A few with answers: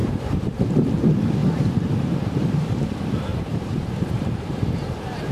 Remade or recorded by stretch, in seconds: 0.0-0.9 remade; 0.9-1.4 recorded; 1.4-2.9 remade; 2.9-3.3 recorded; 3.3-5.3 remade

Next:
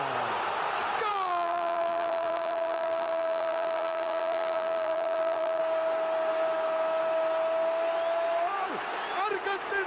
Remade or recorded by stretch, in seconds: 0.0-1.1 recorded; 1.1-5.6 remade; 5.6-9.9 recorded

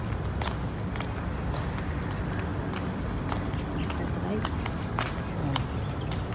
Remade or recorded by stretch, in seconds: 0.0-6.3 recorded

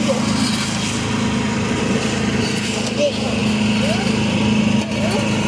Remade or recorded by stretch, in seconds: 0.0-5.5 recorded

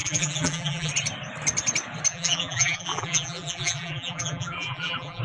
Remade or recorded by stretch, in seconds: 0.0-0.9 remade; 0.9-2.1 recorded; 2.1-5.2 remade

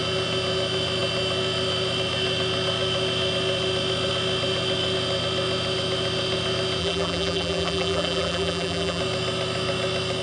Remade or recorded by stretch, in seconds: 0.0-6.8 recorded; 6.8-9.0 remade; 9.0-10.2 recorded

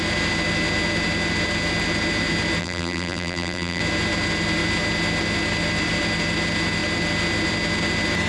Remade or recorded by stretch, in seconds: 0.0-2.6 recorded; 2.6-3.8 remade; 3.8-8.3 recorded

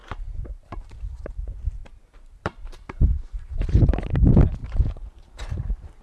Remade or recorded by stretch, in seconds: 0.0-1.3 remade; 1.3-1.8 recorded; 1.8-2.8 remade; 2.8-4.6 recorded; 4.6-5.4 remade; 5.4-6.0 recorded